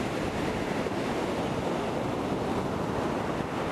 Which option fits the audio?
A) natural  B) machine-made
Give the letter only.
A